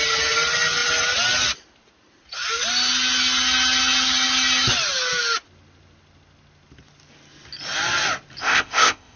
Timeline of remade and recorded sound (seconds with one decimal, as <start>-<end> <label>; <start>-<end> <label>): 0.0-8.4 recorded; 8.4-9.2 remade